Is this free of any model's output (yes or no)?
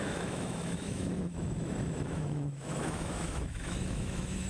no